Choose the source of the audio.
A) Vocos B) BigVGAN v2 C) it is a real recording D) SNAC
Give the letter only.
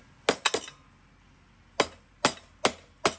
C